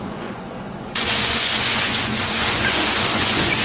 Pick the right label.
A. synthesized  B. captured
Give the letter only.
A